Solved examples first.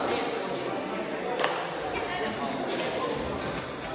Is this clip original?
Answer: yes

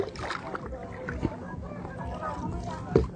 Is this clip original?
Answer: yes